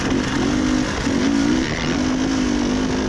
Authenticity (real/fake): real